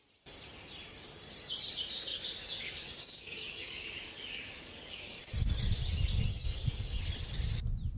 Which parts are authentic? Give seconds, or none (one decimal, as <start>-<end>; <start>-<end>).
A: 0.0-2.1; 5.2-6.3; 7.0-8.0